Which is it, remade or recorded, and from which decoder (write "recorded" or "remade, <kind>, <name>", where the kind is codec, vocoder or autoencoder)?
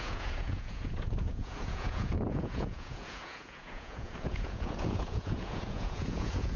remade, vocoder, Vocos